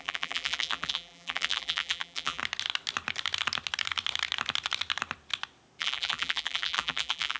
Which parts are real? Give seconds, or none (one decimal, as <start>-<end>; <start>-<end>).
2.4-5.8